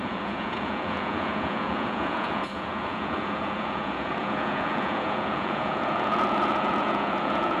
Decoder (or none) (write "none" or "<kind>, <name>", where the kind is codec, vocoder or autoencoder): vocoder, Vocos